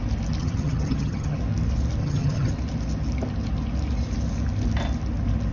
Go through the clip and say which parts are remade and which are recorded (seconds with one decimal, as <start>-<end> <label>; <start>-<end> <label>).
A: 0.0-0.4 recorded; 0.4-1.4 remade; 1.4-2.0 recorded; 2.0-2.5 remade; 2.5-5.5 recorded